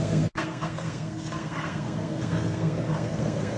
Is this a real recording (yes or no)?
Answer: no